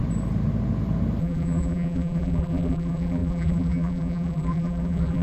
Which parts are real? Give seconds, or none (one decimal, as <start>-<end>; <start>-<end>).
0.0-1.2

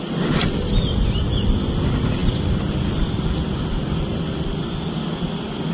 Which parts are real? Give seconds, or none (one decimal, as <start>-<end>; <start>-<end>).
0.0-5.7

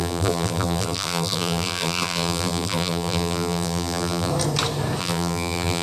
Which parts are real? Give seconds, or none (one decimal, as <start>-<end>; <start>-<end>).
4.3-5.0

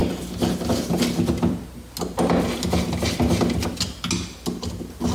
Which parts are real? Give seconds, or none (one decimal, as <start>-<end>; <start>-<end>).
0.0-5.1

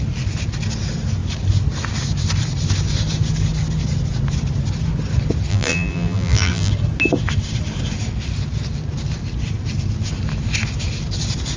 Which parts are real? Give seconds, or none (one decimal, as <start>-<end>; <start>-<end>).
0.0-5.5; 6.7-11.6

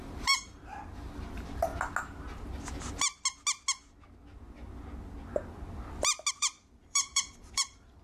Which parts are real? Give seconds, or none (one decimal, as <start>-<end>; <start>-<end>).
1.7-6.3

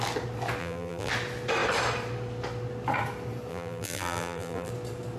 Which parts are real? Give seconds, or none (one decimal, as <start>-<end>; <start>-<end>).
0.0-0.6; 1.1-3.5; 4.7-5.2